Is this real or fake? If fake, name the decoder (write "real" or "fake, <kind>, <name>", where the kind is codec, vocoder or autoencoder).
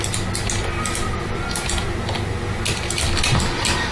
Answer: real